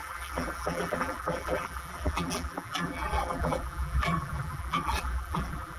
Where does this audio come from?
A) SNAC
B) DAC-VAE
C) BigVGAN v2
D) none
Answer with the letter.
C